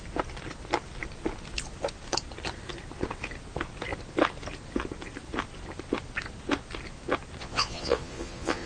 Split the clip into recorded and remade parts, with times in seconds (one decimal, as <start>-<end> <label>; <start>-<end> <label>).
0.0-7.4 recorded; 7.4-8.7 remade